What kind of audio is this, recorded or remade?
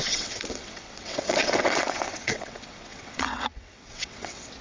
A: remade